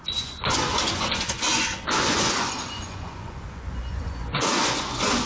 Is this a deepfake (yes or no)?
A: yes